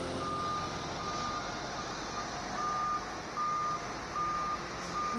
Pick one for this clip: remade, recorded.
recorded